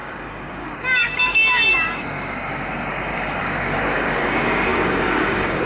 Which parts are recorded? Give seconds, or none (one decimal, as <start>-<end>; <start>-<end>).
none